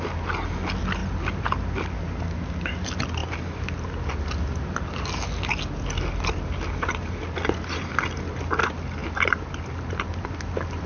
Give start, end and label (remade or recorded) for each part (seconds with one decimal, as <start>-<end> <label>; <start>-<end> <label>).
0.0-10.9 recorded

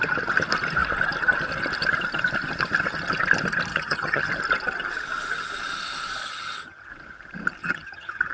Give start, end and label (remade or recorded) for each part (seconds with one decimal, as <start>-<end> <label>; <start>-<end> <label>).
0.0-3.7 recorded; 3.7-4.3 remade; 4.3-6.2 recorded; 6.2-6.9 remade; 6.9-7.6 recorded; 7.6-8.3 remade

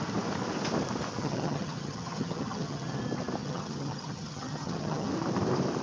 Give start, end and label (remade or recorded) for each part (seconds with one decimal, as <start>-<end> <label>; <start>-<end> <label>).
0.0-1.2 recorded; 1.2-3.0 remade; 3.0-3.4 recorded; 3.4-5.1 remade; 5.1-5.8 recorded